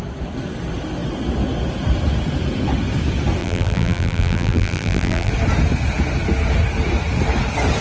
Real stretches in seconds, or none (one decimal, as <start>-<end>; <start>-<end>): 0.0-3.4; 5.3-7.8